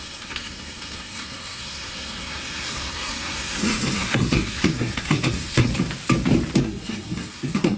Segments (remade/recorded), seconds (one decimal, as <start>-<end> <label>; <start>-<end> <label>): 0.0-5.7 remade; 5.7-6.6 recorded; 6.6-7.8 remade